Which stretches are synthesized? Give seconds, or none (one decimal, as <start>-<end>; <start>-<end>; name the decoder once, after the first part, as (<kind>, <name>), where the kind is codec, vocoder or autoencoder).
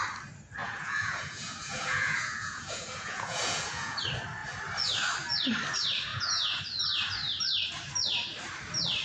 0.6-4.0 (vocoder, Vocos); 6.1-6.6